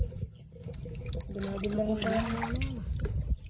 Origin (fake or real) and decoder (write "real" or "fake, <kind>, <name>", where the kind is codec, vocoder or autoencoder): real